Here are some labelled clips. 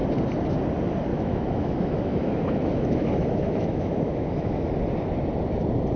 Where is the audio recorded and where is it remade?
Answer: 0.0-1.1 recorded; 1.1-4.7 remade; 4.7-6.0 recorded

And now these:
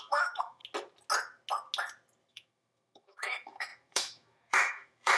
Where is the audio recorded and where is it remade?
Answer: 0.0-0.6 remade; 0.6-2.3 recorded; 2.3-5.2 remade

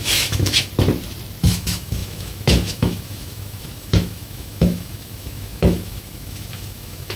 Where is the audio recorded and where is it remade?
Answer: 0.0-0.7 remade; 0.7-1.4 recorded; 1.4-7.2 remade

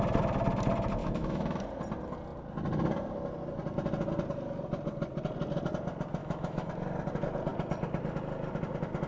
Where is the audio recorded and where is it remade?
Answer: 0.0-1.0 recorded; 1.0-1.6 remade; 1.6-6.2 recorded; 6.2-6.7 remade; 6.7-9.1 recorded

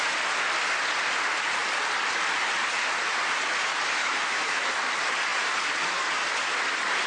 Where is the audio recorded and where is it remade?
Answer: 0.0-4.0 recorded; 4.0-4.7 remade; 4.7-7.1 recorded

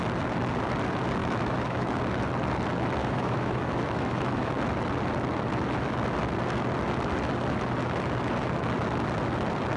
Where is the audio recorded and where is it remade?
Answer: 0.0-1.2 recorded; 1.2-2.0 remade; 2.0-3.0 recorded; 3.0-4.5 remade; 4.5-9.8 recorded

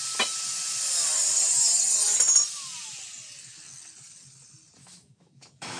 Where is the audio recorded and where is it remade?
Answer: 0.0-4.8 recorded; 4.8-5.8 remade